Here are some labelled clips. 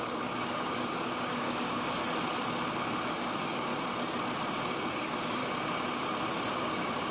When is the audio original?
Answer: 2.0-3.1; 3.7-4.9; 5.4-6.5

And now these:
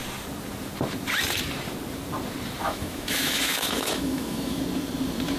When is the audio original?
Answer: 0.0-2.6; 4.6-5.4